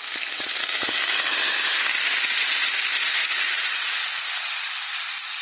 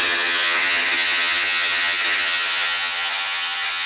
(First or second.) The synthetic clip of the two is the second